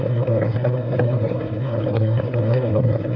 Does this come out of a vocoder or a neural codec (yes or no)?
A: yes